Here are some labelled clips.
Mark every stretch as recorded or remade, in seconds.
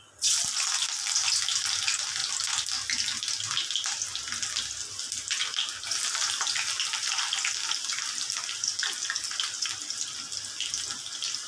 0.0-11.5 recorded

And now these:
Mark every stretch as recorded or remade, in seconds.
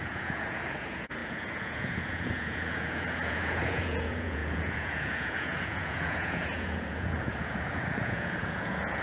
0.0-9.0 remade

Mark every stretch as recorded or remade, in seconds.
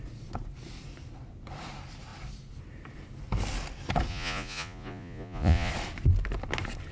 0.0-4.1 recorded; 4.1-5.7 remade; 5.7-6.9 recorded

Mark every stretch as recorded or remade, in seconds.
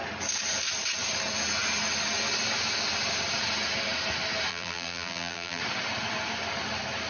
0.0-4.5 recorded; 4.5-5.6 remade; 5.6-7.1 recorded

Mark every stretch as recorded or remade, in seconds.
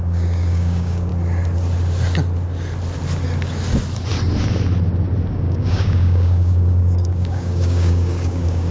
0.0-1.1 remade; 1.1-5.3 recorded; 5.3-8.7 remade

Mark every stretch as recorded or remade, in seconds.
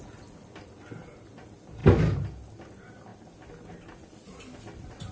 0.0-5.1 recorded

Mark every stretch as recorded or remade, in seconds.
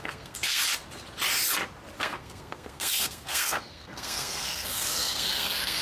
0.0-0.6 remade; 0.6-2.0 recorded; 2.0-5.8 remade